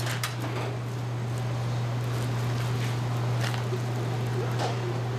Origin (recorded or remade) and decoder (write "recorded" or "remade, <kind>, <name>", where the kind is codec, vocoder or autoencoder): recorded